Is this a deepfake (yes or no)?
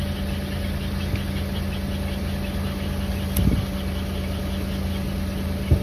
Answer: no